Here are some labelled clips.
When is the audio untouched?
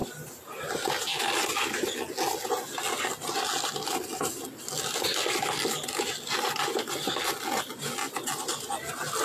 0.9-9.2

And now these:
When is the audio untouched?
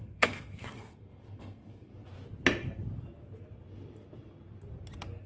1.9-5.3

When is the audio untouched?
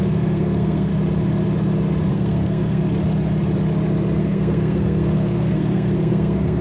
0.9-2.1; 2.8-4.2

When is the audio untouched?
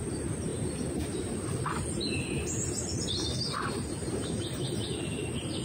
0.0-5.6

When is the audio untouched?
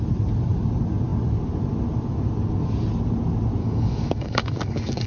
0.0-3.6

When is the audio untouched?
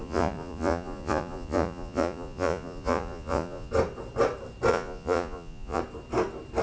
3.7-4.7; 5.8-6.6